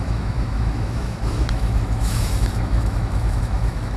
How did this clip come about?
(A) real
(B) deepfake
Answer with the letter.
B